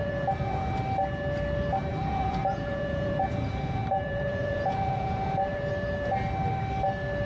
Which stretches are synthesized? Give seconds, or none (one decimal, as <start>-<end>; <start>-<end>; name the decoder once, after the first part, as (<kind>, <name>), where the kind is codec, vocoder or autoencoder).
0.0-0.7 (vocoder, Vocos); 1.9-5.7